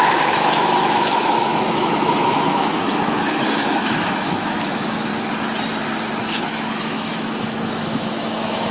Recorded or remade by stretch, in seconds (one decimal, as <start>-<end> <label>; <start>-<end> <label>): 0.0-5.1 remade; 5.1-6.2 recorded; 6.2-8.7 remade

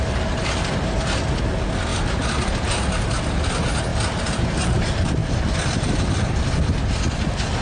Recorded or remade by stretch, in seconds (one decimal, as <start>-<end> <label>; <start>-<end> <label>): 0.0-7.6 recorded